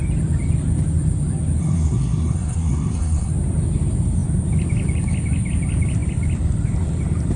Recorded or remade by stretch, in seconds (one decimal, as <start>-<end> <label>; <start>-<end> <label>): 0.0-1.6 recorded; 1.6-3.3 remade; 3.3-7.4 recorded